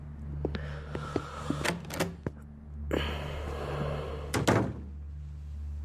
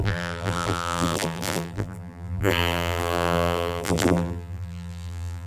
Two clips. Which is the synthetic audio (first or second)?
second